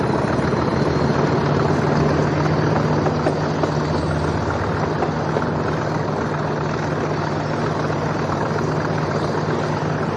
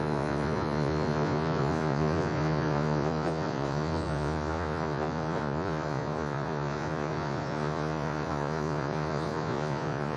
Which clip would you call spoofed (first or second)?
second